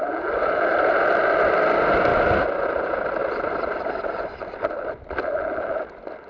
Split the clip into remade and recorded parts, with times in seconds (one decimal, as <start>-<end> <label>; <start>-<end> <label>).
0.0-3.2 recorded; 3.2-5.8 remade; 5.8-6.3 recorded